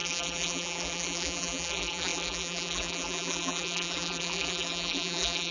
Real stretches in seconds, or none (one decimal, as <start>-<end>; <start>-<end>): none